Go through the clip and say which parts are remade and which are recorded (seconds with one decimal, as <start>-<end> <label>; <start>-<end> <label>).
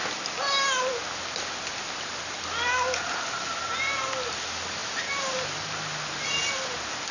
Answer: 0.0-7.1 recorded